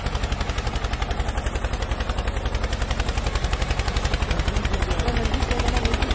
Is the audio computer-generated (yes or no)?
no